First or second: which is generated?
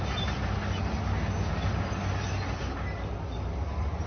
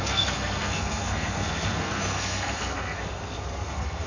second